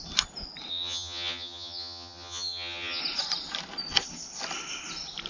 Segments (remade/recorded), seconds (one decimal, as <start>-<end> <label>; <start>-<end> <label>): 0.0-0.7 recorded; 0.7-3.0 remade; 3.0-5.3 recorded